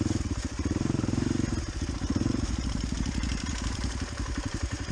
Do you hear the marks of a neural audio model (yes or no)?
yes